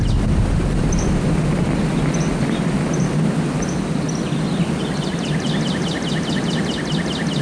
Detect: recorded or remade recorded